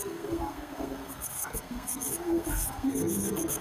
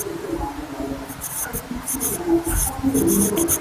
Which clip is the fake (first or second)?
first